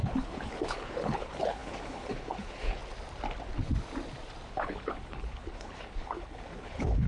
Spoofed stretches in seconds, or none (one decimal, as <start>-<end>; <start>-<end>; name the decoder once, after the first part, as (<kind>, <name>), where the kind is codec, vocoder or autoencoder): 0.0-2.8 (codec, HILCodec); 4.5-7.1

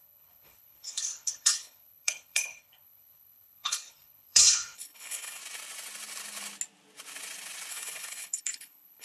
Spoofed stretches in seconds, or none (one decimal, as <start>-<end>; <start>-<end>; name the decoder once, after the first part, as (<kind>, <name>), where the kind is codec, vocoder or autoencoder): 0.0-5.4 (codec, HILCodec); 7.7-9.0